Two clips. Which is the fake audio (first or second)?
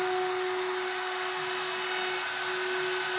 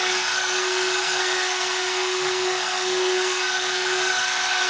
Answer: second